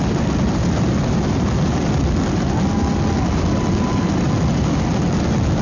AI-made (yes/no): no